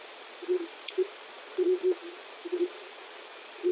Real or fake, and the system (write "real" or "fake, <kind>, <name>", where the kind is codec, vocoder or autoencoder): fake, vocoder, Vocos